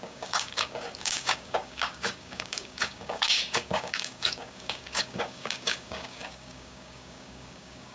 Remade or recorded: remade